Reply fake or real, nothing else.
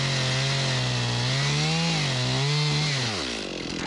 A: real